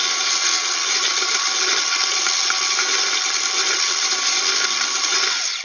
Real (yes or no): yes